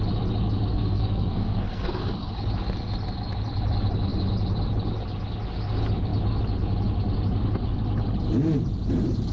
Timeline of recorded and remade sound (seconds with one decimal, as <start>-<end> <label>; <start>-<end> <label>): 0.0-0.7 recorded; 0.7-2.3 remade; 2.3-9.3 recorded